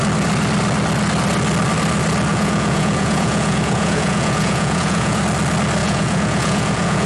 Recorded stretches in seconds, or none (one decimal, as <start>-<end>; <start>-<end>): 0.0-2.3; 5.2-5.8